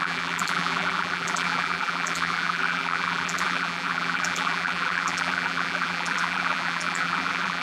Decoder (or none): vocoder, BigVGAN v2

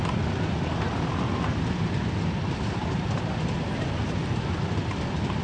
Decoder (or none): none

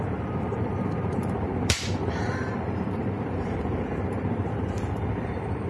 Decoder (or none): vocoder, BigVGAN v2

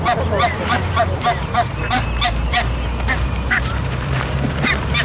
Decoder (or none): vocoder, BigVGAN v2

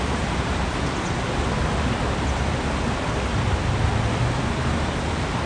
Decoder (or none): none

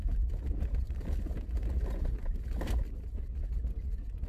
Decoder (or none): none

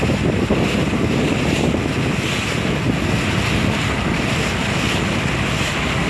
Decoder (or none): none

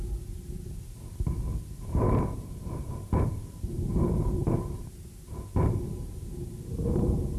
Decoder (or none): vocoder, BigVGAN v2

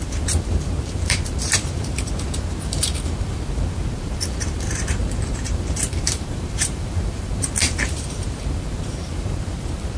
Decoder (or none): vocoder, BigVGAN v2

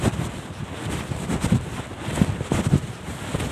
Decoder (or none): none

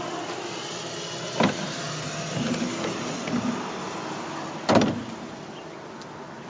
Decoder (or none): none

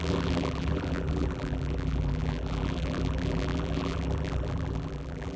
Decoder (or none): vocoder, BigVGAN v2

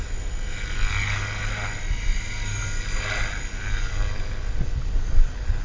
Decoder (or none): none